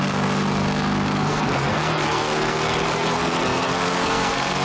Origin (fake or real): fake